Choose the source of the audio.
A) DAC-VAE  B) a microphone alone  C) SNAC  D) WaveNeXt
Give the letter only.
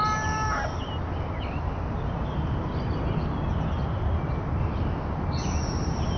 B